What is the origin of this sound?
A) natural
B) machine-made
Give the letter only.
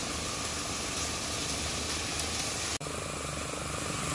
A